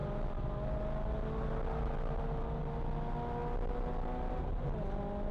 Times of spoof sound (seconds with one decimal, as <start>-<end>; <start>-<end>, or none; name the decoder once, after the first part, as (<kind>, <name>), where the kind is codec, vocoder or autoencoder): none